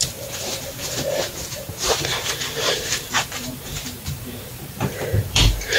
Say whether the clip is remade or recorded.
remade